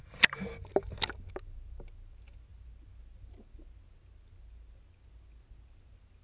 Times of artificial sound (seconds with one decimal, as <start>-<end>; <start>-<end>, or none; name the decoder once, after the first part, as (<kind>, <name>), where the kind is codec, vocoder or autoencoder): none